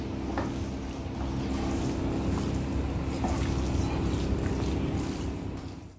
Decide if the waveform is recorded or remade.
recorded